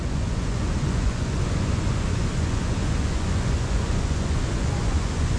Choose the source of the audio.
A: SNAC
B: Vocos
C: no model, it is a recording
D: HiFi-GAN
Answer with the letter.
B